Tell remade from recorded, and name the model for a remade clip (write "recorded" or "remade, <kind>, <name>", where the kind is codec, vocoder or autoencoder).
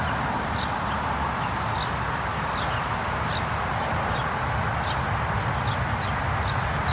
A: recorded